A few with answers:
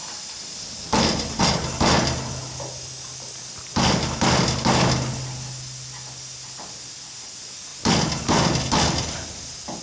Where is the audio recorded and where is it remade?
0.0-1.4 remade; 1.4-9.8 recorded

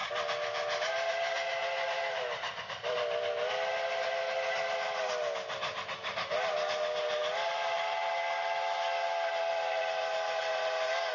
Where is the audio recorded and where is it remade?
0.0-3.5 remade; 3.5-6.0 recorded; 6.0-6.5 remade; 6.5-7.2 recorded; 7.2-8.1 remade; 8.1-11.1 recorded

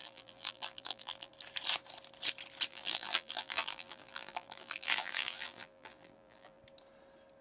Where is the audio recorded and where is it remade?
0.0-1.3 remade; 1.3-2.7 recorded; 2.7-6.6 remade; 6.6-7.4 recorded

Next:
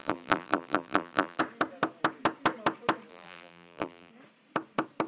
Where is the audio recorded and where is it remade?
0.0-1.4 remade; 1.4-3.1 recorded; 3.1-4.1 remade; 4.1-5.1 recorded

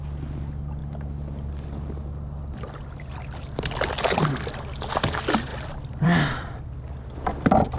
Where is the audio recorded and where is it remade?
0.0-5.5 recorded; 5.5-6.6 remade; 6.6-7.8 recorded

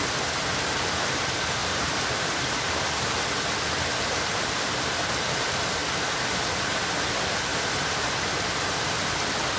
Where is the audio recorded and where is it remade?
0.0-9.6 recorded

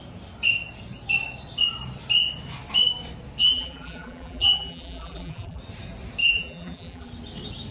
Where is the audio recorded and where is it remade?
0.0-3.4 recorded; 3.4-5.6 remade; 5.6-6.2 recorded; 6.2-7.1 remade; 7.1-7.7 recorded

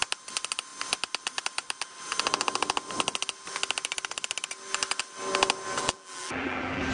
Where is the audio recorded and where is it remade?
0.0-5.8 recorded; 5.8-6.9 remade